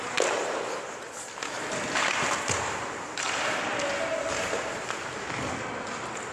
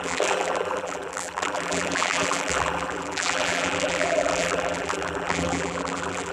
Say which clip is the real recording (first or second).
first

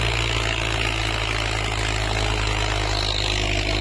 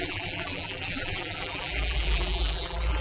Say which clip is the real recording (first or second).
first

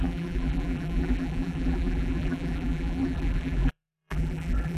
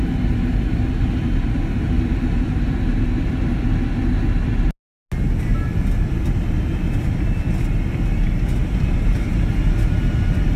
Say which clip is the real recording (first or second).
second